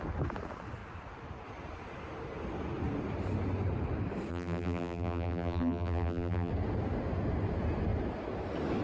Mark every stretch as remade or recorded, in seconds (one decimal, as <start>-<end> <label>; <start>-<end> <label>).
0.0-4.3 recorded; 4.3-6.5 remade; 6.5-8.8 recorded